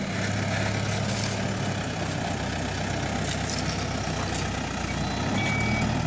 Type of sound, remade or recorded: recorded